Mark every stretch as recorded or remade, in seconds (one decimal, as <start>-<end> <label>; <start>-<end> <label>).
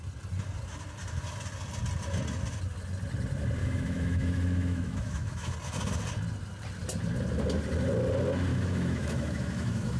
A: 0.0-3.6 recorded; 3.6-5.5 remade; 5.5-8.5 recorded; 8.5-10.0 remade